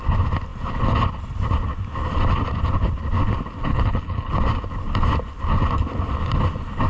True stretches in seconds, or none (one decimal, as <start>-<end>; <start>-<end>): 0.0-3.7; 4.3-6.9